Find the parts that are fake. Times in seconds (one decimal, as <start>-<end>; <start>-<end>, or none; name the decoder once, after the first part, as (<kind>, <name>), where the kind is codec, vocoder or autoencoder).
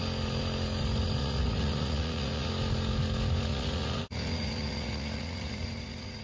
1.2-2.5 (vocoder, Vocos); 3.5-6.2